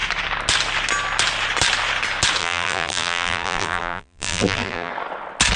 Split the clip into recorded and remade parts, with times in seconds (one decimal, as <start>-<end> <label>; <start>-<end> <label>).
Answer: 0.0-2.4 recorded; 2.4-4.9 remade; 4.9-5.6 recorded